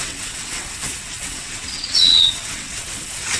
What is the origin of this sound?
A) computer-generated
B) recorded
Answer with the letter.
A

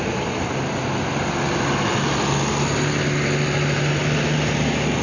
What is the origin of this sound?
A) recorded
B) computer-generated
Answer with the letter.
A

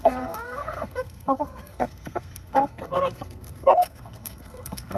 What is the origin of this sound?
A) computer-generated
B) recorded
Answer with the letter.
A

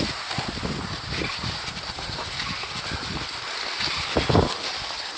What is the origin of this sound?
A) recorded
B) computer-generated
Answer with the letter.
A